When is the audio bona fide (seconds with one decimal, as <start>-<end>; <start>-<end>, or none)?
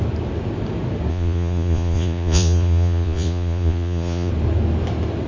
0.0-1.1; 4.3-5.3